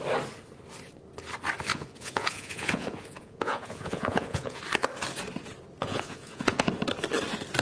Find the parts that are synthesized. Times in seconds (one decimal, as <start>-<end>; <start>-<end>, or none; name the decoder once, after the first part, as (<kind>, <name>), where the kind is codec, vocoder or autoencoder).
1.7-4.6 (vocoder, Vocos); 5.8-6.7